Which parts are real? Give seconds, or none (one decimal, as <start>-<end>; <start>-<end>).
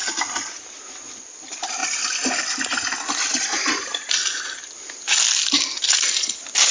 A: 0.0-6.7